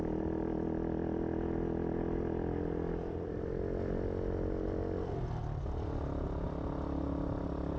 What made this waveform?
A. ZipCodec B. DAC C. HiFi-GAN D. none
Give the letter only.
D